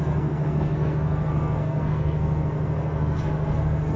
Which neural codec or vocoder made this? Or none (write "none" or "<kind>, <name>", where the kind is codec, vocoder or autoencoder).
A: codec, SNAC